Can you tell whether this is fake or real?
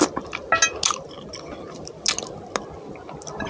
real